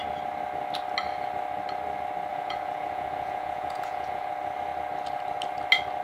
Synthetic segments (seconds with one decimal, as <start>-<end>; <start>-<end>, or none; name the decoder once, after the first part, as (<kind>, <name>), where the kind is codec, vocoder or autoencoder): 2.3-4.3 (vocoder, Vocos)

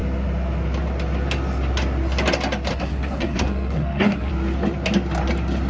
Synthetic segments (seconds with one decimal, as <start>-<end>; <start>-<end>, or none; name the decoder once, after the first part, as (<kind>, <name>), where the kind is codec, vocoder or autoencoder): 2.7-4.3 (codec, SNAC)

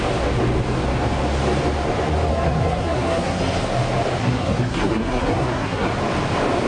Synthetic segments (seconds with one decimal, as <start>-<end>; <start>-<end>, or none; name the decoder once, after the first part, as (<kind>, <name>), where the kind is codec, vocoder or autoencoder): 2.3-3.4 (codec, SNAC); 4.2-5.9

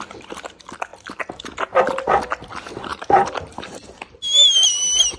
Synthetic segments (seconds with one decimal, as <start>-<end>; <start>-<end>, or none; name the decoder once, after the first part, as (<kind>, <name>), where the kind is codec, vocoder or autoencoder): 0.9-2.2 (vocoder, BigVGAN v2)

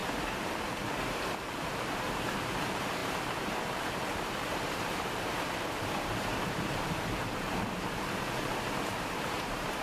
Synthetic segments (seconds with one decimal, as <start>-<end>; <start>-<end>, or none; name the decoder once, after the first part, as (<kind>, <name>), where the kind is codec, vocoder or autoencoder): 0.9-9.8 (vocoder, BigVGAN v2)

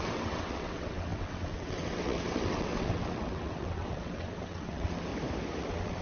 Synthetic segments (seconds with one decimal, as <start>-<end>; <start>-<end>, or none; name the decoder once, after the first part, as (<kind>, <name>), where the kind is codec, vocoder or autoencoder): 0.0-5.1 (vocoder, WaveNeXt); 5.6-6.0